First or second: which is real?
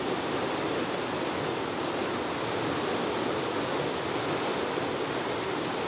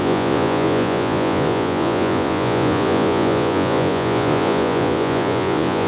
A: first